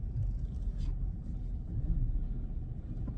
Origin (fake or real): real